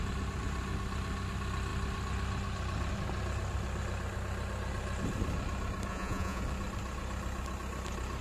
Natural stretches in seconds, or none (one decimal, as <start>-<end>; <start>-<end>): 0.0-5.9; 6.4-8.2